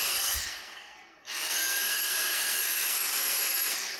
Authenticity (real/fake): fake